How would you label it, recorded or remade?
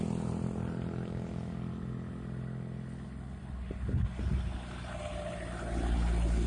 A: recorded